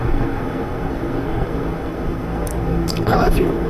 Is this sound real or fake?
fake